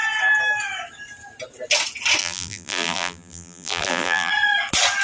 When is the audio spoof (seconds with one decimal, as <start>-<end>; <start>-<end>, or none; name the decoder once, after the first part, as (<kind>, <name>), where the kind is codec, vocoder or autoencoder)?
2.2-4.3 (vocoder, BigVGAN v2)